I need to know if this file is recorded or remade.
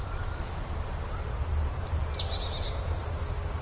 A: recorded